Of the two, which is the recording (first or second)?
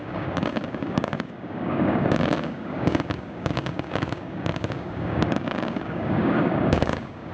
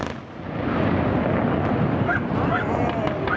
second